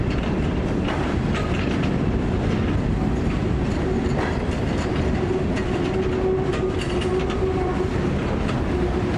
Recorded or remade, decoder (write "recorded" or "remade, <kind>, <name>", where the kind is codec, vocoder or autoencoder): recorded